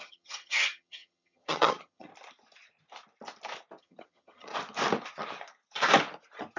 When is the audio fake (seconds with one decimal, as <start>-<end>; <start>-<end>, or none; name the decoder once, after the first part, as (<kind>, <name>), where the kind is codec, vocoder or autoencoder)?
0.0-2.1 (vocoder, HiFi-GAN); 3.8-4.5